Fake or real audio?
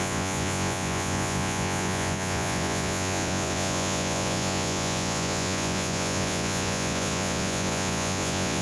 fake